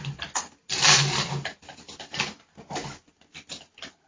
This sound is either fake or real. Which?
real